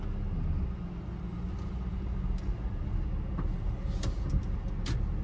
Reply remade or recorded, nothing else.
recorded